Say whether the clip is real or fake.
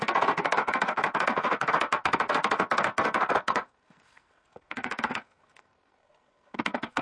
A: fake